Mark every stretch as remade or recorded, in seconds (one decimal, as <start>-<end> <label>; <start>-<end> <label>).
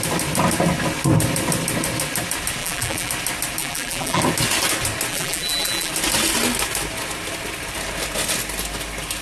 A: 0.0-2.6 recorded; 2.6-3.1 remade; 3.1-3.6 recorded; 3.6-4.2 remade; 4.2-5.1 recorded; 5.1-5.9 remade; 5.9-9.2 recorded